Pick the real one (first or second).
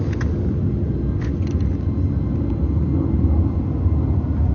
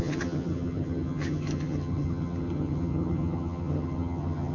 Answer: first